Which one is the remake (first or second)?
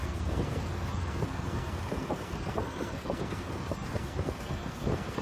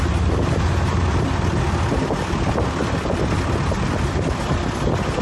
first